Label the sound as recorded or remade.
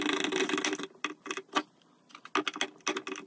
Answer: recorded